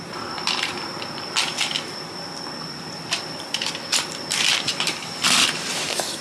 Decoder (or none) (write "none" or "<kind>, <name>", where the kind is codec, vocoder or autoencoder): vocoder, BigVGAN v2